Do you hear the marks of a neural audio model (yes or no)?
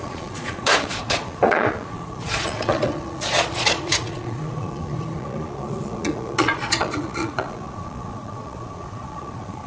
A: yes